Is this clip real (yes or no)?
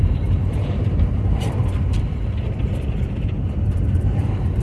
no